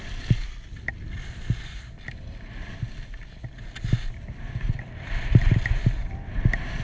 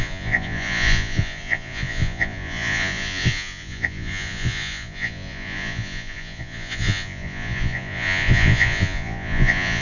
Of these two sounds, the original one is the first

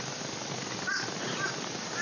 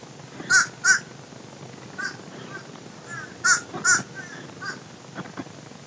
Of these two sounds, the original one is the second